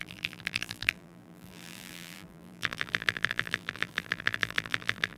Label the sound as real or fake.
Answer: fake